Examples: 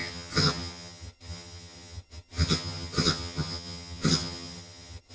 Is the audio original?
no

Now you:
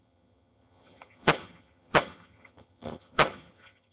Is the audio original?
no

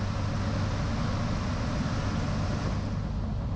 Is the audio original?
yes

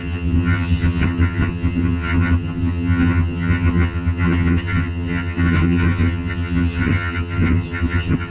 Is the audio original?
no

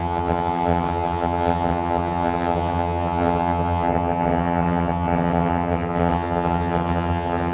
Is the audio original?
no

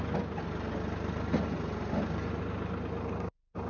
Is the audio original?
yes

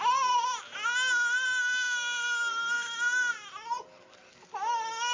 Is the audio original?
yes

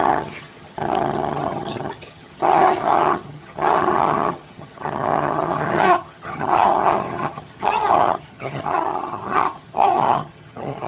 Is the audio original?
no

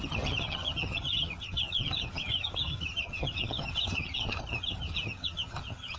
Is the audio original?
no